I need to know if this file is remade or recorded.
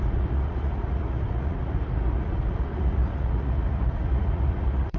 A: remade